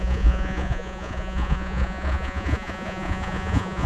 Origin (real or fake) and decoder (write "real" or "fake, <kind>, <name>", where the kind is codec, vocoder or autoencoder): fake, vocoder, Vocos